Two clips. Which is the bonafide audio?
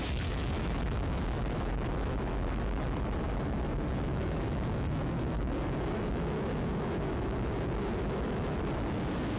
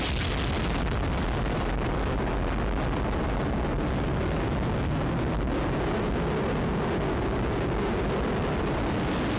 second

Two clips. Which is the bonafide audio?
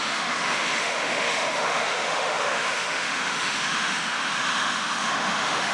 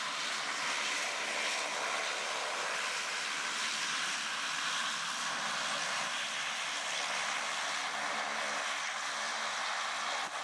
second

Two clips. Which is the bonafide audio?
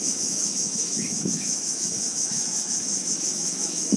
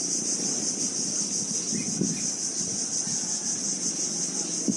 second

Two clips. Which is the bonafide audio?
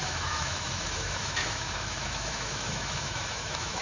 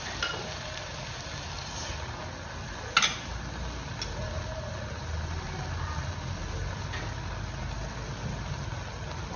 second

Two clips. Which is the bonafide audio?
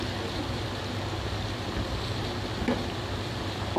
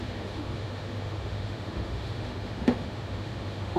first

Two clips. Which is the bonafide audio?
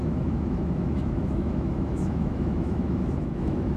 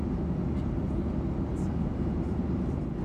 second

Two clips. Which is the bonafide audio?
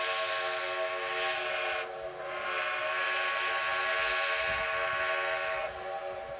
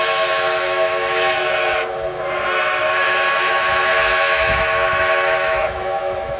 first